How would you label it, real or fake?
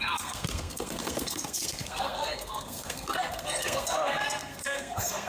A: fake